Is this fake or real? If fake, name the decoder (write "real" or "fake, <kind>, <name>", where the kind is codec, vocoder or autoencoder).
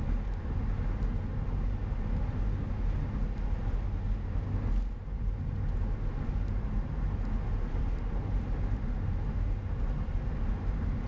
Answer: real